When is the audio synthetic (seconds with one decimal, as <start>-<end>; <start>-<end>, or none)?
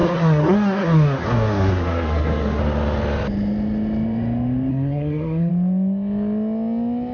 0.0-2.6; 4.7-5.5